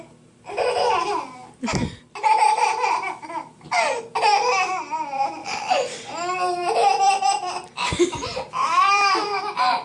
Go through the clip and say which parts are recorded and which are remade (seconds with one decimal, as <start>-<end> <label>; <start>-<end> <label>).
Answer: 0.0-5.4 recorded; 5.4-9.4 remade; 9.4-9.8 recorded